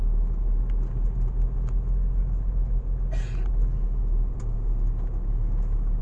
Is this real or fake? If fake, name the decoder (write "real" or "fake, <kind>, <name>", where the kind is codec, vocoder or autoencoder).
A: real